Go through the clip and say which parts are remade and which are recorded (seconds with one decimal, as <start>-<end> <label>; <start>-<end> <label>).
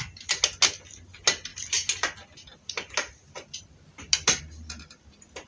0.0-5.5 recorded